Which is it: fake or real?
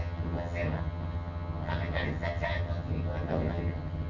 fake